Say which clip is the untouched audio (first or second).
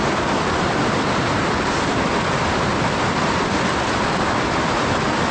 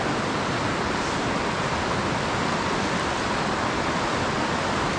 second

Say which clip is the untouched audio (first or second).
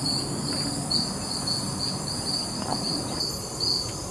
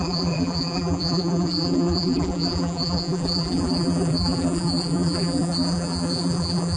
first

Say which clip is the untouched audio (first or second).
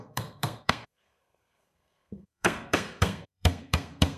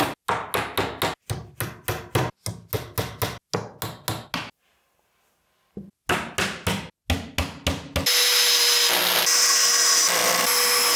second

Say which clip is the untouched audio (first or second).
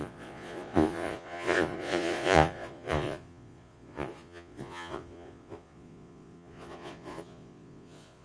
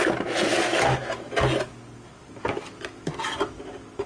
second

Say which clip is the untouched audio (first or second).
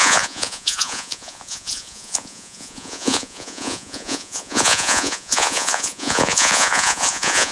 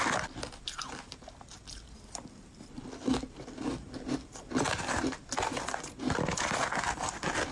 second